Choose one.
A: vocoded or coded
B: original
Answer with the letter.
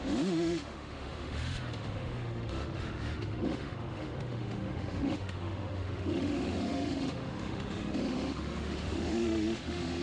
A